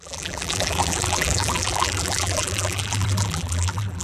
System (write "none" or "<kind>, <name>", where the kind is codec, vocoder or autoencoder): vocoder, BigVGAN v2